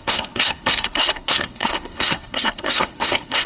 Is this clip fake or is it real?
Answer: fake